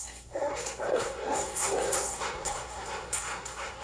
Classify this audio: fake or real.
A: fake